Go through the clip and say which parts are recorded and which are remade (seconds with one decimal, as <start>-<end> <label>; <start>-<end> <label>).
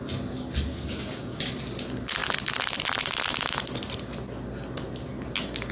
0.0-0.7 recorded; 0.7-1.5 remade; 1.5-5.7 recorded